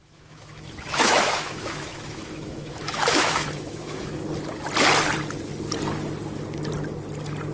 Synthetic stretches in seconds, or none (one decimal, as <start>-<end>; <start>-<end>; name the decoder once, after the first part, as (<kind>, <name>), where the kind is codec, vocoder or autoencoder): 0.0-4.1 (autoencoder, DAC-VAE)